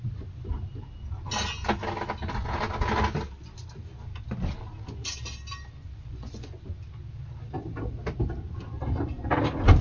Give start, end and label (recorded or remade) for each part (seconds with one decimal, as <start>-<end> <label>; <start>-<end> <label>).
0.0-5.8 recorded; 5.8-6.6 remade; 6.6-9.8 recorded